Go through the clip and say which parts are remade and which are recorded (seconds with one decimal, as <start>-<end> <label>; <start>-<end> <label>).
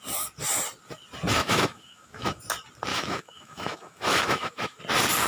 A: 0.0-1.4 recorded; 1.4-2.4 remade; 2.4-2.9 recorded; 2.9-4.8 remade; 4.8-5.3 recorded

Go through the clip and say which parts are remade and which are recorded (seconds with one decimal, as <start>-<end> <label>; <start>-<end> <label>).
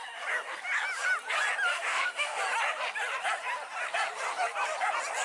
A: 0.0-1.7 recorded; 1.7-2.4 remade; 2.4-5.2 recorded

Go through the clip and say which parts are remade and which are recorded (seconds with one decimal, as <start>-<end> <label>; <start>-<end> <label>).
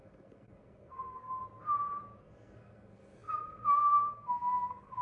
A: 0.0-1.4 remade; 1.4-2.2 recorded; 2.2-5.0 remade